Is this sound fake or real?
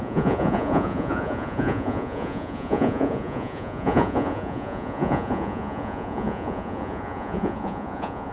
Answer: fake